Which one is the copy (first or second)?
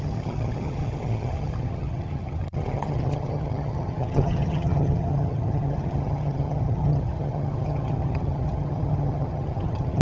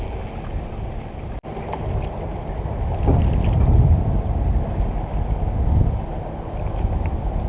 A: first